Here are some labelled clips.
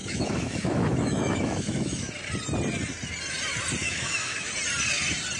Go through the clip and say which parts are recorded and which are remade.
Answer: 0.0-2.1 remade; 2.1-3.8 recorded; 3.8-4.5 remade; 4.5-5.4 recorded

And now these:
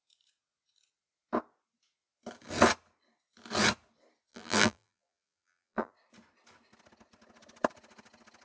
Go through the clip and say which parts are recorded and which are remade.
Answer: 0.0-4.3 recorded; 4.3-5.9 remade; 5.9-8.4 recorded

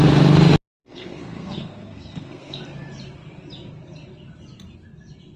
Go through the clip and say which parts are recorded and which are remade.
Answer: 0.0-0.8 recorded; 0.8-2.6 remade; 2.6-5.4 recorded